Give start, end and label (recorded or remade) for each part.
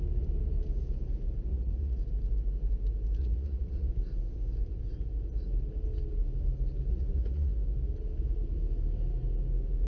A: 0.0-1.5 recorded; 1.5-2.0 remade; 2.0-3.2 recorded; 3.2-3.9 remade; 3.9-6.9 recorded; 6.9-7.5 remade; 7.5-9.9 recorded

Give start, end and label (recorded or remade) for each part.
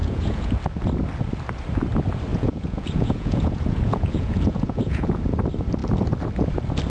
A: 0.0-0.5 remade; 0.5-2.3 recorded; 2.3-5.2 remade; 5.2-6.9 recorded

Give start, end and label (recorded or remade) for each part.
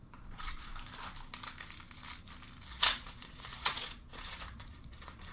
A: 0.0-0.7 remade; 0.7-2.7 recorded; 2.7-5.3 remade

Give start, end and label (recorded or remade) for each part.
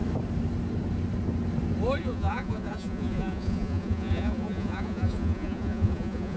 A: 0.0-2.0 recorded; 2.0-6.4 remade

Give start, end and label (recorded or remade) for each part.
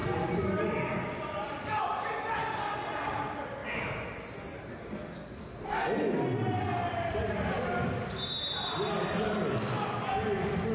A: 0.0-10.7 recorded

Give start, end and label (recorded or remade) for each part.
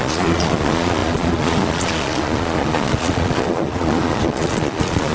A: 0.0-5.1 remade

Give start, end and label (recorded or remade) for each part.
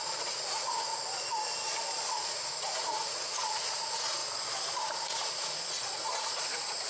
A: 0.0-0.9 remade; 0.9-2.1 recorded; 2.1-4.2 remade; 4.2-4.8 recorded; 4.8-6.9 remade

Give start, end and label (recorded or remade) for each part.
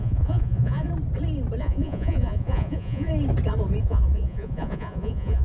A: 0.0-0.9 remade; 0.9-1.6 recorded; 1.6-3.1 remade; 3.1-3.8 recorded; 3.8-5.4 remade